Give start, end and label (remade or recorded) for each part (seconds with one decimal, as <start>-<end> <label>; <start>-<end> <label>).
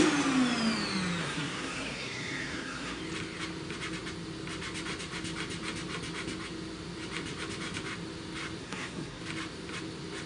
0.0-1.2 recorded; 1.2-3.0 remade; 3.0-8.6 recorded; 8.6-9.2 remade; 9.2-10.3 recorded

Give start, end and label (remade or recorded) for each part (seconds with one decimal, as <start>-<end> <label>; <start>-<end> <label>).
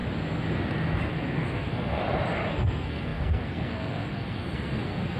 0.0-1.1 recorded; 1.1-2.0 remade; 2.0-2.5 recorded; 2.5-5.2 remade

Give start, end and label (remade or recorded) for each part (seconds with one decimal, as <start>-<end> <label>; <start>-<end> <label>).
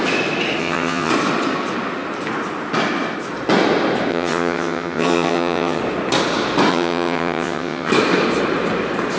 0.0-0.6 recorded; 0.6-1.1 remade; 1.1-4.1 recorded; 4.1-5.8 remade; 5.8-6.7 recorded; 6.7-7.9 remade; 7.9-9.2 recorded